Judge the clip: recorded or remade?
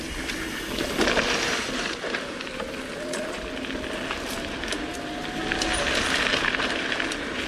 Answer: recorded